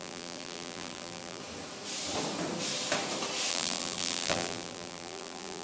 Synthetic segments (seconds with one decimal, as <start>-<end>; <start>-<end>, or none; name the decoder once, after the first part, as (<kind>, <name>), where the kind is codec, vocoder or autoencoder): 0.0-1.4 (vocoder, BigVGAN v2); 3.5-5.6